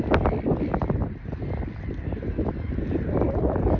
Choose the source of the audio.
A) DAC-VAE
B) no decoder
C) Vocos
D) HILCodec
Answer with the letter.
B